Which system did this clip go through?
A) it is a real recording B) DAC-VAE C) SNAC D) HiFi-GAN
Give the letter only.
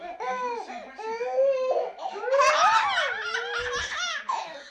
A